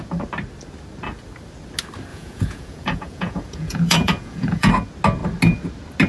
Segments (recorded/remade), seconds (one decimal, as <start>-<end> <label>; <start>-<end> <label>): 0.0-2.1 recorded; 2.1-4.7 remade; 4.7-6.1 recorded